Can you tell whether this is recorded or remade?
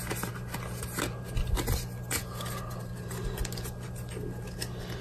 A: recorded